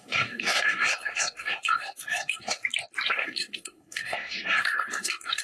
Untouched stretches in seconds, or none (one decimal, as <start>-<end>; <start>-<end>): 2.6-3.1

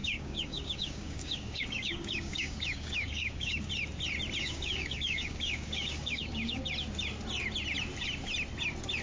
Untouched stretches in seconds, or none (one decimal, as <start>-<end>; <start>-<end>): 3.7-4.4; 6.6-9.0

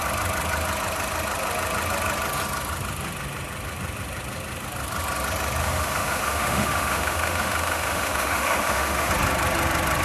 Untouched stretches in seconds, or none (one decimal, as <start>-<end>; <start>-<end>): 0.0-5.6; 9.1-10.0